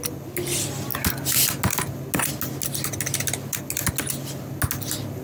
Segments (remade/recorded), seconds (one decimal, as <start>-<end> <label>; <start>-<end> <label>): 0.0-5.2 recorded